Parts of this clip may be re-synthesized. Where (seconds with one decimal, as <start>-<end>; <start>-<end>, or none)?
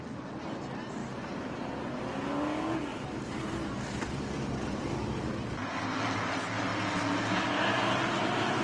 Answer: 1.0-2.0; 2.9-5.8